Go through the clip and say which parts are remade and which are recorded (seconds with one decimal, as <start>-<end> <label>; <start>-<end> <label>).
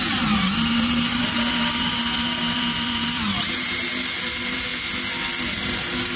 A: 0.0-4.7 remade; 4.7-5.4 recorded; 5.4-6.2 remade